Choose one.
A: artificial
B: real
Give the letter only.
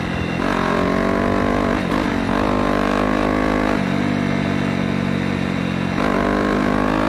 B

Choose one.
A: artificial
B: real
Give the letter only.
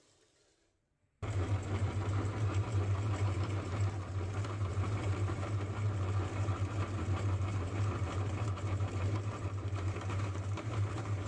A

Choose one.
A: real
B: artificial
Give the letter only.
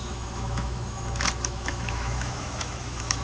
B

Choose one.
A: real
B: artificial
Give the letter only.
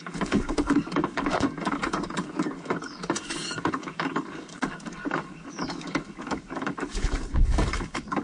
B